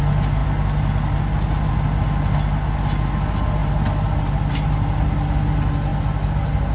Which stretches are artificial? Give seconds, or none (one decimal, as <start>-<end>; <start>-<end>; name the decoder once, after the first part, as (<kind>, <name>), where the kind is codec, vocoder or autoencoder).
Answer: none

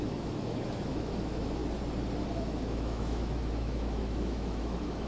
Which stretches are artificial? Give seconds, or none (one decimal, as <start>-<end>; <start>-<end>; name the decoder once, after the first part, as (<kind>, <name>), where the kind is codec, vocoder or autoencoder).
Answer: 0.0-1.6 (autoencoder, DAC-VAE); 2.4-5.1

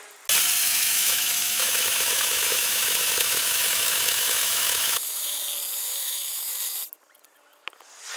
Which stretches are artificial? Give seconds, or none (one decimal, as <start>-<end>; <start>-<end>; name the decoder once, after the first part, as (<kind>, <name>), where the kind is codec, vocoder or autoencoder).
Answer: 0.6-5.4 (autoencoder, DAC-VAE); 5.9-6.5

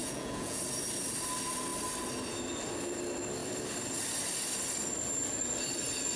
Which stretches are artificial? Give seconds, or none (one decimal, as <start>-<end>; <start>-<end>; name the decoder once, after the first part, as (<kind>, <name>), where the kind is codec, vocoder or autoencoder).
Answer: 0.0-0.6 (vocoder, Vocos)

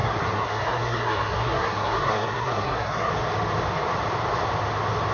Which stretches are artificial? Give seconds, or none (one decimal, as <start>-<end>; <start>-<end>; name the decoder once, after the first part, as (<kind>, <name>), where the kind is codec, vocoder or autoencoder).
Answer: 0.0-3.1 (codec, SNAC)

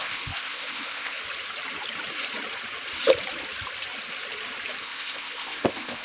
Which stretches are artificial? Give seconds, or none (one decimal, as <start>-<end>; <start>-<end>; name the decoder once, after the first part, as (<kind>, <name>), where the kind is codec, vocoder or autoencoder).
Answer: 0.0-1.2 (codec, ZipCodec); 4.8-6.0